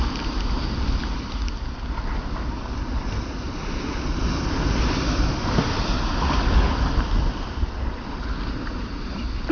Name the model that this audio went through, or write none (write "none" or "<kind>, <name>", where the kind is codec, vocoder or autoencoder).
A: none